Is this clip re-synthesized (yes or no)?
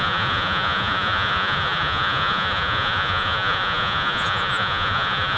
yes